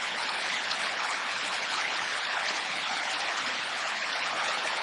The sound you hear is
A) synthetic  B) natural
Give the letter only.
A